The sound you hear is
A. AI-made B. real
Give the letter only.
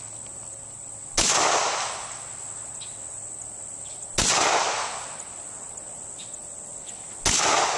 B